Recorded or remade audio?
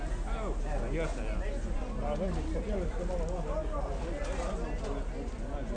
recorded